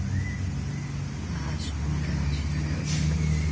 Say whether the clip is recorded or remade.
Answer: recorded